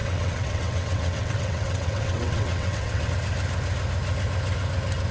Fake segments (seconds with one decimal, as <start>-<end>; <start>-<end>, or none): 0.0-3.1